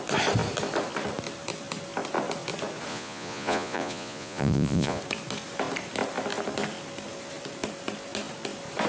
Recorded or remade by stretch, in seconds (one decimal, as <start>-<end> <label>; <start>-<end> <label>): 0.0-2.9 recorded; 2.9-5.0 remade; 5.0-8.9 recorded